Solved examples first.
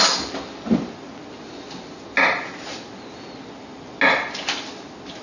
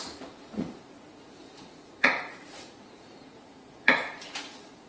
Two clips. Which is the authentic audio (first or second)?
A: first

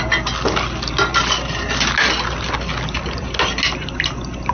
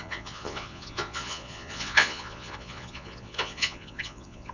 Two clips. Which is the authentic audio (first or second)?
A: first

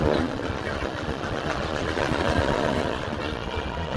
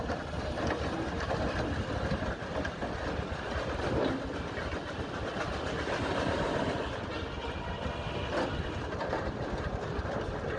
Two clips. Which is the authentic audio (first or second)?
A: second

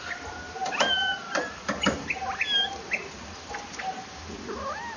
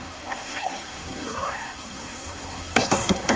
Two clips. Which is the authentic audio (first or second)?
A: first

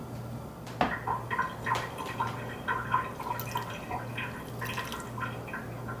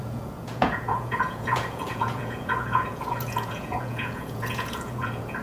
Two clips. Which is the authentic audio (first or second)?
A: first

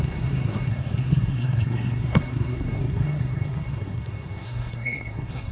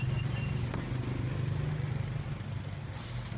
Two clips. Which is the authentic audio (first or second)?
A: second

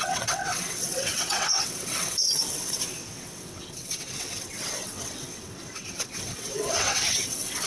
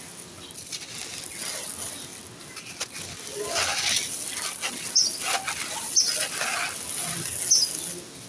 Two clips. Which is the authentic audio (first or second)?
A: second